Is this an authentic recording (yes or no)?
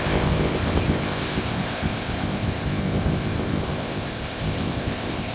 no